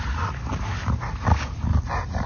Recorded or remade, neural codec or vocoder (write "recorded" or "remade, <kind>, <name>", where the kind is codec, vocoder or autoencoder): recorded